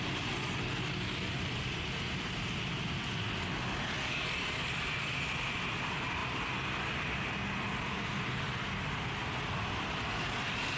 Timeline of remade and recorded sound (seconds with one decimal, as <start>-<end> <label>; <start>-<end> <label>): 0.0-6.2 remade; 6.2-9.7 recorded; 9.7-10.8 remade